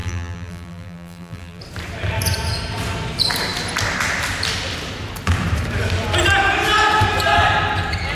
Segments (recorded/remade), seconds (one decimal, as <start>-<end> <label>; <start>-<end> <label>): 0.0-1.6 remade; 1.6-8.1 recorded